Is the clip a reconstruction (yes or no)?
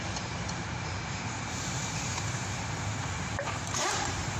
yes